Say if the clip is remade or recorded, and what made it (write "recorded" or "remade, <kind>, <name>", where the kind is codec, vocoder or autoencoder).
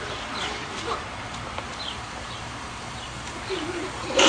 remade, vocoder, BigVGAN v2